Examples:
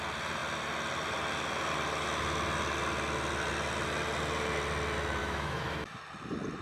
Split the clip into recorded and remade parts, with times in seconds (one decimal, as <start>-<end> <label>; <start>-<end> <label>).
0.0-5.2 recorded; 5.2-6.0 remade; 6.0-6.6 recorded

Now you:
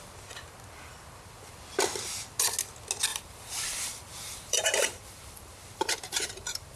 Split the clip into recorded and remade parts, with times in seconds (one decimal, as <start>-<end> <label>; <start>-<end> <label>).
0.0-3.1 recorded; 3.1-6.8 remade

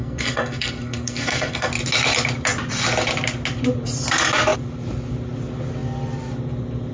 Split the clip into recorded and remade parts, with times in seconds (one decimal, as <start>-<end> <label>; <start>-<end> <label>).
0.0-1.7 remade; 1.7-6.9 recorded

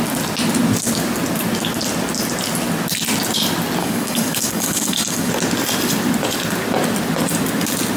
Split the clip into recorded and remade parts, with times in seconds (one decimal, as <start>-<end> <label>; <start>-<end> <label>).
0.0-3.8 recorded; 3.8-5.3 remade; 5.3-8.0 recorded

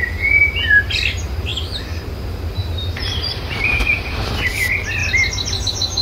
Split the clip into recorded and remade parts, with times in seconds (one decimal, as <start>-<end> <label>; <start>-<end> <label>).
0.0-2.6 recorded; 2.6-4.5 remade; 4.5-5.0 recorded; 5.0-6.0 remade

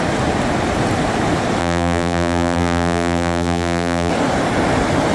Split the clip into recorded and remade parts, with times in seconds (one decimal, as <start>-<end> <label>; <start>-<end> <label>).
0.0-1.6 recorded; 1.6-4.1 remade; 4.1-5.1 recorded